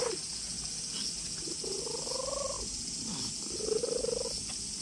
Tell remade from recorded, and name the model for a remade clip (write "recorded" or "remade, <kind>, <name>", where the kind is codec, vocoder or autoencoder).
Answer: recorded